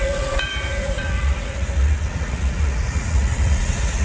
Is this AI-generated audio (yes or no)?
yes